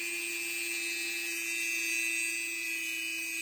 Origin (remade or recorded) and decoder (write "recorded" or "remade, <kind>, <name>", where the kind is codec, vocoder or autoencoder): recorded